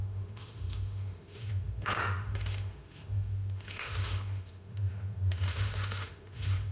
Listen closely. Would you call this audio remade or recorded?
remade